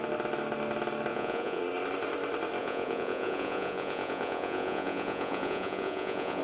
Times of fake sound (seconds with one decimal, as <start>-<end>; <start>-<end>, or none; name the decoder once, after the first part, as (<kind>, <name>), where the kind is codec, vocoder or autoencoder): 1.1-1.6 (vocoder, Vocos); 2.6-6.4